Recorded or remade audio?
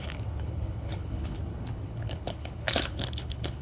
remade